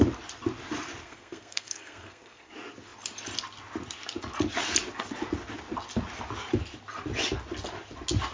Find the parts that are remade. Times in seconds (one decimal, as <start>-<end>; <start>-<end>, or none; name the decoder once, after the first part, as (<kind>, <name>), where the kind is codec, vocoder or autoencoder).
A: 1.0-2.5 (codec, SNAC)